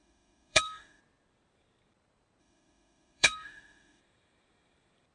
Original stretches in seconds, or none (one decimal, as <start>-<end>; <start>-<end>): 1.0-2.4; 4.0-5.1